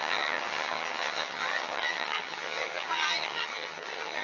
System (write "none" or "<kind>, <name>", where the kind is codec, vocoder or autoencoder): vocoder, HiFi-GAN